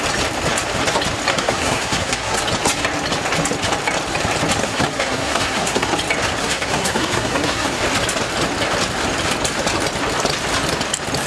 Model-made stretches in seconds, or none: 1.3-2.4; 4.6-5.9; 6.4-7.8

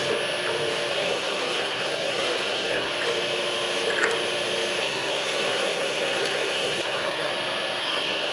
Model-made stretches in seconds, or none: 0.9-2.9; 4.8-7.3; 7.8-8.3

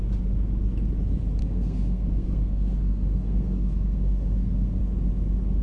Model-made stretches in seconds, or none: 1.4-4.8

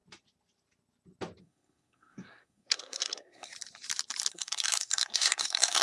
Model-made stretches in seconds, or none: 1.4-3.5; 4.3-5.8

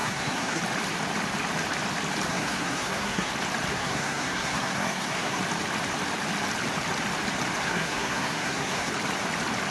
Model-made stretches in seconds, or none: 0.0-0.6; 2.3-3.3; 3.7-5.4; 7.6-8.9

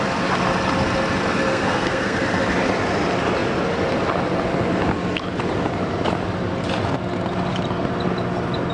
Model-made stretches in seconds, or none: 1.5-2.2

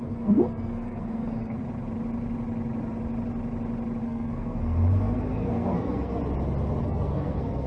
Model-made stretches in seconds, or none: 0.0-1.6; 4.0-6.1; 6.8-7.7

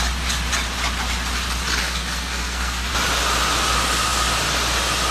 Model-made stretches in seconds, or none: 1.8-2.9